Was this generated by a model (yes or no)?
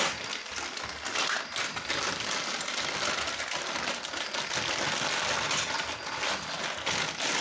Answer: no